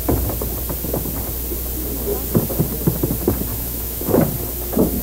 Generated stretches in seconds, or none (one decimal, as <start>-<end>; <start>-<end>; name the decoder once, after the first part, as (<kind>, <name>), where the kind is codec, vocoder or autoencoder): 3.5-4.1 (autoencoder, DAC-VAE)